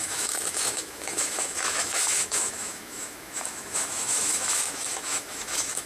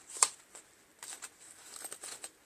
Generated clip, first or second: first